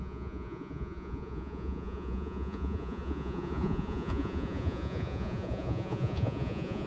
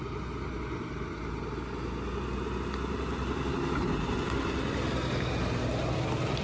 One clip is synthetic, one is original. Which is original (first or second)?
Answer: second